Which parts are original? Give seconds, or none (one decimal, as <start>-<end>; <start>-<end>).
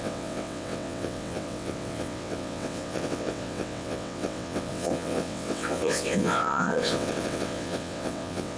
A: none